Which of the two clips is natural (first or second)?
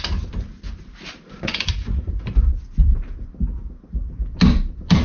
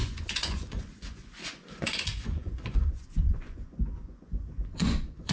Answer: first